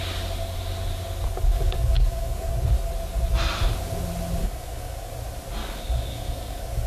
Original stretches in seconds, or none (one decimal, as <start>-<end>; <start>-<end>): 0.0-1.5; 2.5-4.4; 5.1-5.6